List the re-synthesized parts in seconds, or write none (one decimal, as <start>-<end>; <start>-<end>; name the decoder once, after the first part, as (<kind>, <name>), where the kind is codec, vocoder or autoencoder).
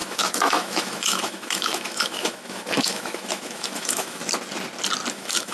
0.0-4.2 (autoencoder, DAC-VAE); 5.1-5.5